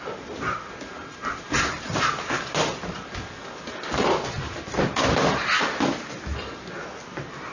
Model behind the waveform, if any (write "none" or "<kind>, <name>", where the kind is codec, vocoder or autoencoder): none